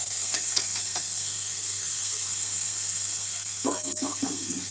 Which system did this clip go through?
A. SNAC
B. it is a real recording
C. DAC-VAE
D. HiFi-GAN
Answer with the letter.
A